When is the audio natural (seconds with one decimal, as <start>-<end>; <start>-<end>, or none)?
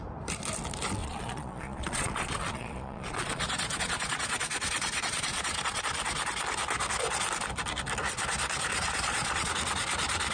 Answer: 0.0-1.0; 5.8-8.7; 9.5-10.3